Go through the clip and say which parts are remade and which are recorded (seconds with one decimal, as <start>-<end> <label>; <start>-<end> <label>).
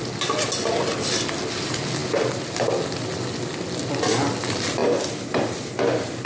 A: 0.0-6.3 recorded